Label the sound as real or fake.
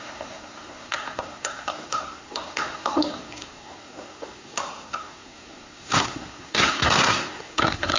fake